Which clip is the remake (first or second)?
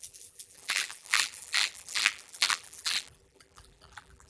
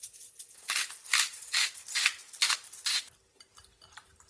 first